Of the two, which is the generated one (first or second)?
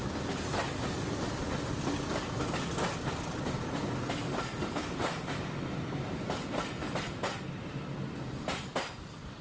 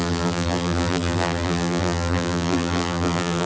second